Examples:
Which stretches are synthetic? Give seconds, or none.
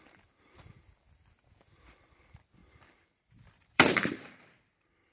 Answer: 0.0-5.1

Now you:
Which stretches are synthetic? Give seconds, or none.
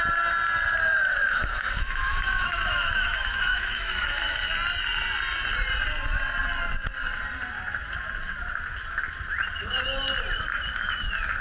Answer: 1.1-4.5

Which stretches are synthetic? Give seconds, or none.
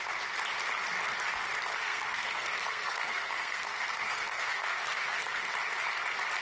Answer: 1.7-5.5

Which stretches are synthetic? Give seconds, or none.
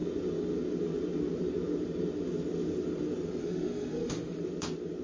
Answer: 3.4-4.4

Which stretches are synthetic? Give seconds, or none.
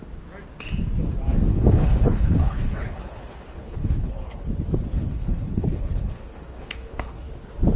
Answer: 1.5-4.5; 4.9-7.3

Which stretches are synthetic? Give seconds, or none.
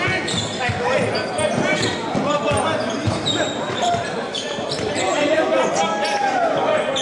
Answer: 3.0-4.9